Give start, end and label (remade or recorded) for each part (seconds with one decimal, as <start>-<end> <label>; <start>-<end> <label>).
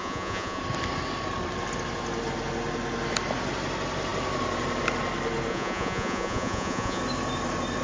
0.0-0.6 remade; 0.6-5.5 recorded; 5.5-7.0 remade; 7.0-7.8 recorded